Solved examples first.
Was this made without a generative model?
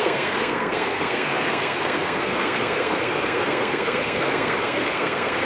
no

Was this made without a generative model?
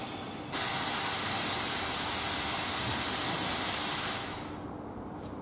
yes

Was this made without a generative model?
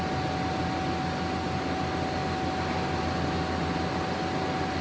yes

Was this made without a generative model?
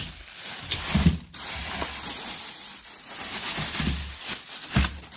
yes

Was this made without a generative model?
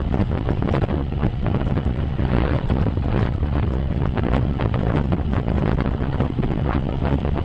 no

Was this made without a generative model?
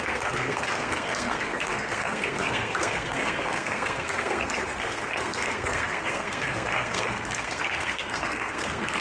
no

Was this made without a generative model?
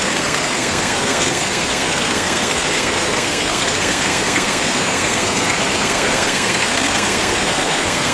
no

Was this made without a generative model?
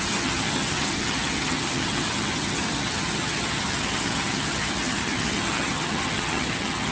no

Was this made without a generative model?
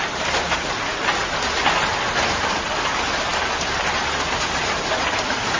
yes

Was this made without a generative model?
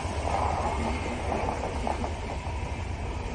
yes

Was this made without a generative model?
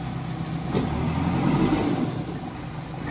yes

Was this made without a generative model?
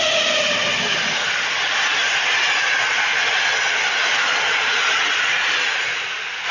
yes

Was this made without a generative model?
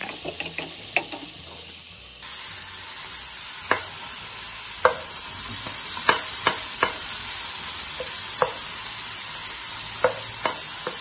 yes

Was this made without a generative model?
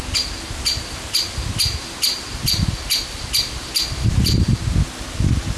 yes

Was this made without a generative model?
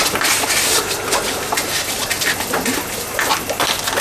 yes